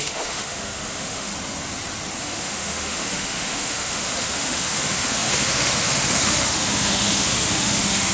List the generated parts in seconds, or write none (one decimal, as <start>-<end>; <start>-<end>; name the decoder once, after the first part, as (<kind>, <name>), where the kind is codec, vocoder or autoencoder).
0.0-1.3 (autoencoder, DAC-VAE); 2.2-8.1